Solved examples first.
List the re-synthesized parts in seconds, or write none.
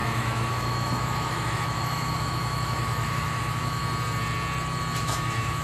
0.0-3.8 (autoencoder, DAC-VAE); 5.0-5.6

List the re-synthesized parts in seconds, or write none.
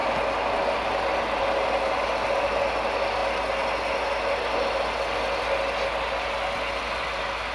none